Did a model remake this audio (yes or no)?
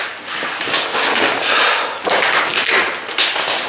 no